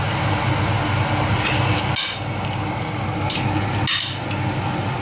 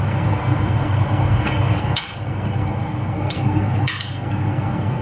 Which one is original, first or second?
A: first